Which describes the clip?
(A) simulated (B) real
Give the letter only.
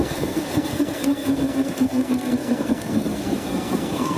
A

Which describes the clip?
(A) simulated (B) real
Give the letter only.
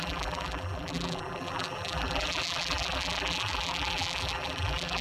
A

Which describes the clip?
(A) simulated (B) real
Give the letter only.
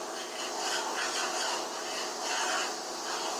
B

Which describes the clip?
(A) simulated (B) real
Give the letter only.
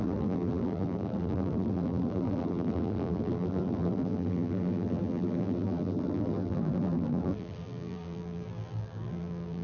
A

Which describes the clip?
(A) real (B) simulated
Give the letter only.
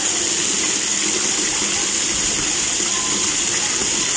A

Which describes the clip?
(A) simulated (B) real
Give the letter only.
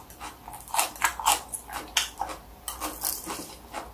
B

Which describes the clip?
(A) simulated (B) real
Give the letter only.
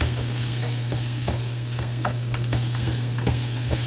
A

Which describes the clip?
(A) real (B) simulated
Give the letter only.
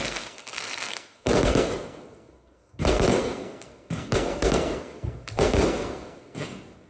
B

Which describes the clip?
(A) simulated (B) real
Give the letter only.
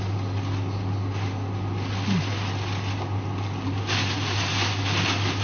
B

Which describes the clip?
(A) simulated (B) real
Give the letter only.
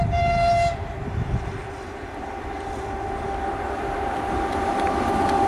B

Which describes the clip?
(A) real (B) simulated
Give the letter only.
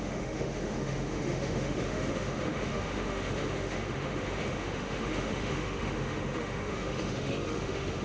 B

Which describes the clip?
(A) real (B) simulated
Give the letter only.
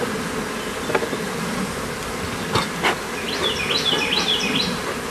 A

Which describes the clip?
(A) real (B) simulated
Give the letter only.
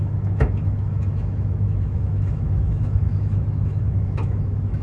B